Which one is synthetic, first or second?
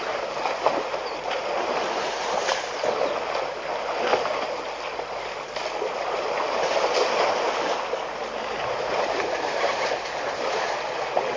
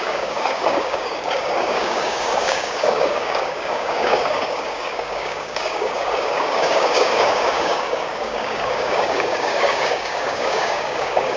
second